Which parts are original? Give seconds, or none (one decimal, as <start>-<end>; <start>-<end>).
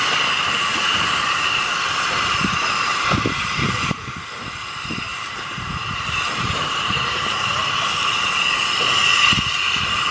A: 0.0-0.7; 1.5-2.9; 4.2-5.1; 7.8-10.1